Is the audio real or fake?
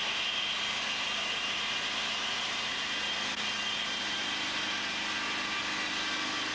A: real